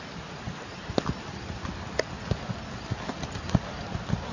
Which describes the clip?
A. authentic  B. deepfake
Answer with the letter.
A